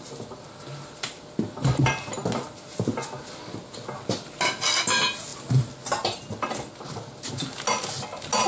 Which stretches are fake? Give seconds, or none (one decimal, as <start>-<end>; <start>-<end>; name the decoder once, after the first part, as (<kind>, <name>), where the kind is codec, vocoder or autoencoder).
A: none